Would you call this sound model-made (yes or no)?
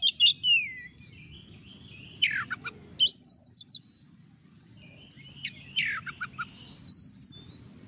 no